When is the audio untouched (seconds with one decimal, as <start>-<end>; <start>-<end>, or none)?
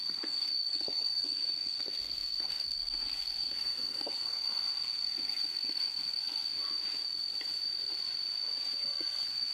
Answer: 6.5-8.8